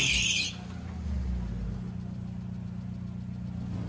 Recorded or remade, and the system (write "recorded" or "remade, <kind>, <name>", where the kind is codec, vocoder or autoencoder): recorded